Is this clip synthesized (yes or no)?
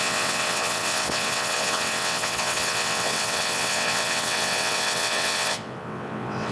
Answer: yes